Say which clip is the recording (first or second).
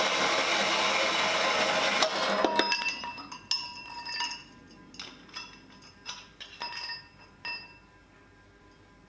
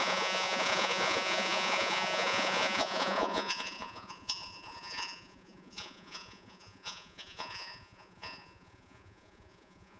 first